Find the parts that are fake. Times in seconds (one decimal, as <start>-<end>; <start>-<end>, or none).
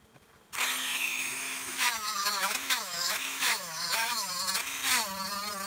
0.9-4.3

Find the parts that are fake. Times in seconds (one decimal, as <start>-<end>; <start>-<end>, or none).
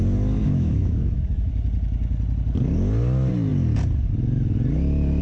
0.4-1.5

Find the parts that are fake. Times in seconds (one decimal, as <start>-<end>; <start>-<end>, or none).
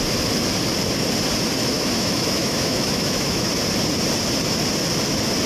1.6-3.5